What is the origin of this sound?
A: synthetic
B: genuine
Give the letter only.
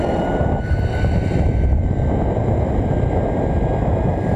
B